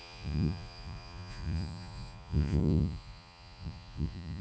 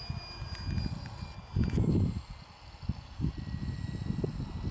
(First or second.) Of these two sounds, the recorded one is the second